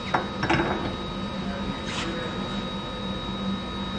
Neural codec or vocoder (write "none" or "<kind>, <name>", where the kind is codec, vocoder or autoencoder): none